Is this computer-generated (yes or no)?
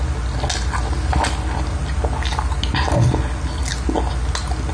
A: no